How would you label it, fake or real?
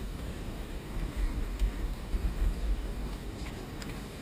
fake